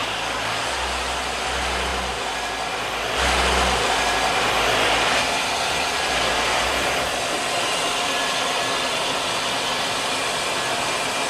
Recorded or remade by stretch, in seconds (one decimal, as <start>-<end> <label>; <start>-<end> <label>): 0.0-0.6 remade; 0.6-11.3 recorded